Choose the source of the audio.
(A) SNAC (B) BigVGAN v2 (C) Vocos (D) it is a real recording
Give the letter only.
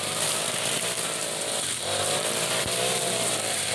B